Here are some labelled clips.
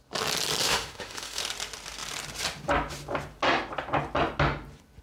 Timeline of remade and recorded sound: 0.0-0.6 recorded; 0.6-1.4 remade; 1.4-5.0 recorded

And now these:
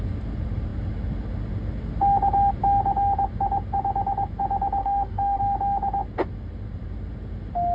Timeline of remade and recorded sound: 0.0-4.8 recorded; 4.8-5.4 remade; 5.4-7.7 recorded

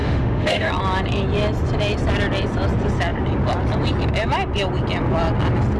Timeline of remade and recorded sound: 0.0-0.7 remade; 0.7-5.8 recorded

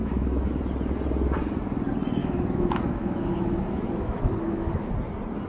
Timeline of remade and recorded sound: 0.0-0.5 remade; 0.5-2.2 recorded; 2.2-4.9 remade; 4.9-5.5 recorded

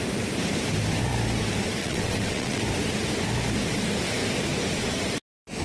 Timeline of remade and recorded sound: 0.0-1.8 recorded; 1.8-2.6 remade; 2.6-5.6 recorded

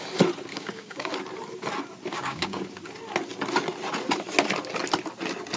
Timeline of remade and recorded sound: 0.0-0.5 recorded; 0.5-1.1 remade; 1.1-2.1 recorded; 2.1-2.6 remade; 2.6-5.6 recorded

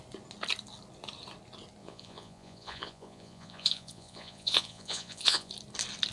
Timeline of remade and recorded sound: 0.0-1.8 recorded; 1.8-5.5 remade; 5.5-6.1 recorded

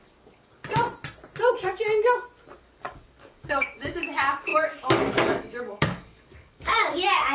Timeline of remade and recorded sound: 0.0-0.6 remade; 0.6-2.6 recorded; 2.6-7.3 remade